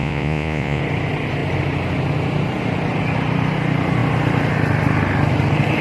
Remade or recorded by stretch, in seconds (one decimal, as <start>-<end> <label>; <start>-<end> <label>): 0.0-0.8 remade; 0.8-5.8 recorded